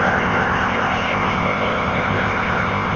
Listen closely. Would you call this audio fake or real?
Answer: fake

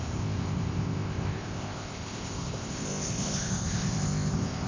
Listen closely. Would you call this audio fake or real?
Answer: fake